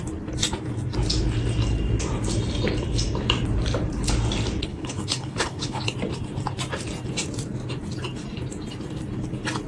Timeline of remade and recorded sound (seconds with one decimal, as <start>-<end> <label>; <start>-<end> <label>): 0.0-4.7 recorded; 4.7-5.8 remade; 5.8-9.7 recorded